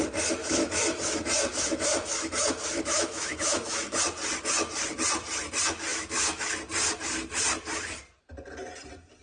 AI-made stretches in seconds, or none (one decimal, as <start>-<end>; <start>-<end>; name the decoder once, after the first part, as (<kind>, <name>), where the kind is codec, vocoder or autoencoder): 0.4-4.0 (autoencoder, DAC-VAE); 5.9-6.4